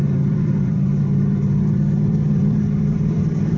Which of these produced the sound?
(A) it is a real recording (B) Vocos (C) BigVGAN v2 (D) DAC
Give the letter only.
C